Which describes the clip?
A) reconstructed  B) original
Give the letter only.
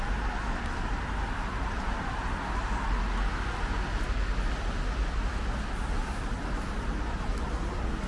B